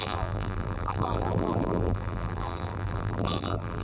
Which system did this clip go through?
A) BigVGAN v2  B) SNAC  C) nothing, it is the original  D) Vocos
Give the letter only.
A